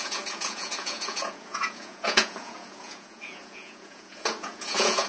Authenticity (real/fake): fake